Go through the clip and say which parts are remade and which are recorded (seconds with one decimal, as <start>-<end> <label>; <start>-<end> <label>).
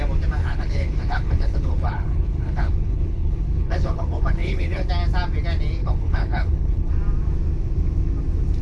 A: 0.0-0.4 recorded; 0.4-4.9 remade; 4.9-5.8 recorded; 5.8-6.9 remade; 6.9-8.6 recorded